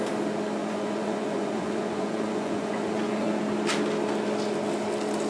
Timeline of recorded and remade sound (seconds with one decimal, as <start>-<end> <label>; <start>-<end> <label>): 0.0-0.6 recorded; 0.6-3.4 remade; 3.4-5.3 recorded